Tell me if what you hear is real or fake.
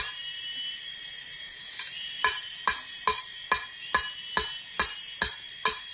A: real